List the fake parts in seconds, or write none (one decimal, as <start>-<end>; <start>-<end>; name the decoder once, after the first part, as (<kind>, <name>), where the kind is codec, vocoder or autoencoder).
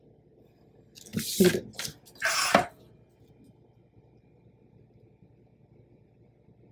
none